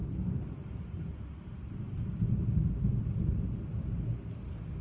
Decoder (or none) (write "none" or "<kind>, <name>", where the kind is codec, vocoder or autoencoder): none